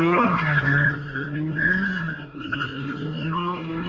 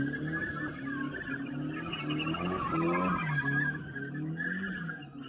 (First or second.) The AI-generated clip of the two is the first